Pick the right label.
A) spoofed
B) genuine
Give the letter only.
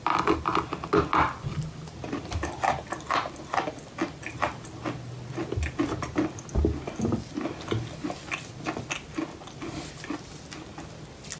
B